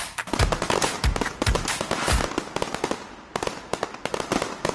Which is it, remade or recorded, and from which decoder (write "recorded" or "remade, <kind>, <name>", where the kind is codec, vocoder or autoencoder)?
recorded